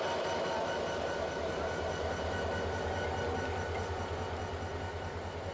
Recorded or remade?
recorded